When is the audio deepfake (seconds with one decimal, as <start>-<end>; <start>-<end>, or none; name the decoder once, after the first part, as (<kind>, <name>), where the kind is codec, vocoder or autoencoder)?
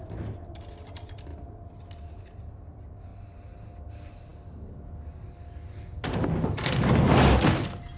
none